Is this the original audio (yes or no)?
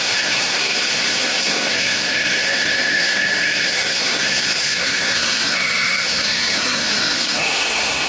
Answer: no